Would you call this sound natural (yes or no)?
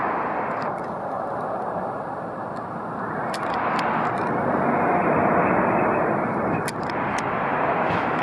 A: yes